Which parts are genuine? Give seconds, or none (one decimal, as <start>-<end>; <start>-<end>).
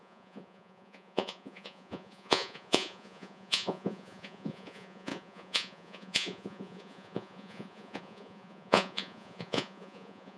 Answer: none